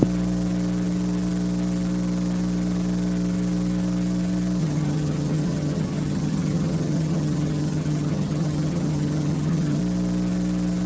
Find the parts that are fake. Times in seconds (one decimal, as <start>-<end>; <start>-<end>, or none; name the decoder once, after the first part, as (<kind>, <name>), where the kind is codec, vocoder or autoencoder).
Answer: 4.6-9.8 (vocoder, HiFi-GAN)